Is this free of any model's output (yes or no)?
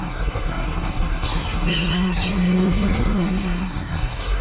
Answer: no